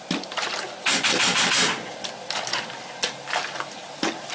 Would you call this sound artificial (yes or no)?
no